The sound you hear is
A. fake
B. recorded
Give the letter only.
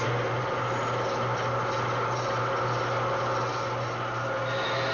B